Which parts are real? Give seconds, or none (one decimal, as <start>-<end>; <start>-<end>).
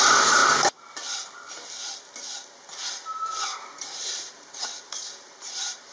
0.4-3.9